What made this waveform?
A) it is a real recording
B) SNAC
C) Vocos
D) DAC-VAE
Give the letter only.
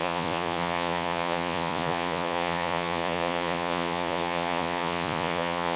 C